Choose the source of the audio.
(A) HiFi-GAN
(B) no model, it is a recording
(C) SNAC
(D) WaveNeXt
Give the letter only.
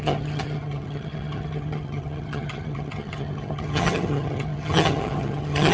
A